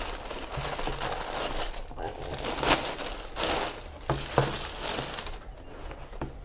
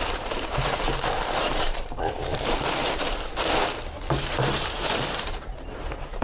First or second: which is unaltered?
first